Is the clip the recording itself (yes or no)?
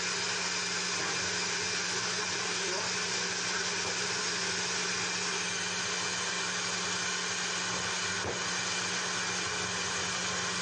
yes